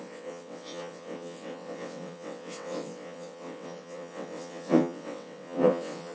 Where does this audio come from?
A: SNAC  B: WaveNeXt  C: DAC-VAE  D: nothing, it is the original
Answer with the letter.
B